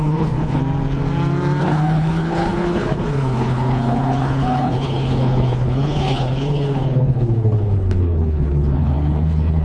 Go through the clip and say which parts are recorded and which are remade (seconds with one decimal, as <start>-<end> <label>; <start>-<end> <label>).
0.0-0.6 remade; 0.6-1.6 recorded; 1.6-9.6 remade